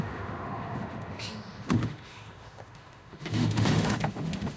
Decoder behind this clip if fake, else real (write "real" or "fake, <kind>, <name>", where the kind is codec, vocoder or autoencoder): fake, autoencoder, DAC-VAE